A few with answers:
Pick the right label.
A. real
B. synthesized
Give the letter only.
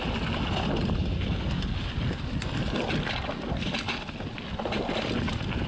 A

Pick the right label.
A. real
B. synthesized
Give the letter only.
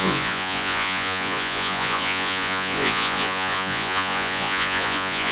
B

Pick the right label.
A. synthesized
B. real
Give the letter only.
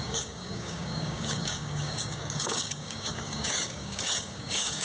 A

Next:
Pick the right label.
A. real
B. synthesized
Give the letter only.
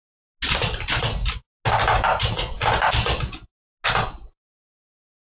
A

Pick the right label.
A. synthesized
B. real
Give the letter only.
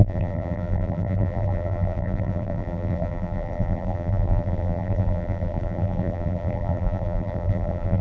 A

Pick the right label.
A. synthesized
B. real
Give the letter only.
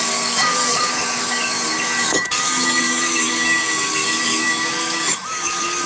A